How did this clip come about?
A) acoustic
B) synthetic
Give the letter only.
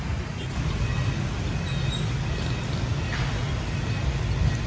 A